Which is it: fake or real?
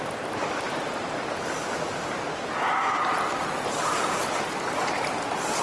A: real